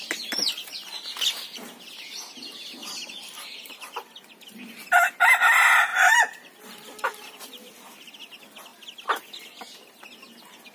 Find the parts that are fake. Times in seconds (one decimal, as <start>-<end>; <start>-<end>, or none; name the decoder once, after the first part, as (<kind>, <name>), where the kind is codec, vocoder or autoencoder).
2.8-5.1 (vocoder, BigVGAN v2); 5.9-7.0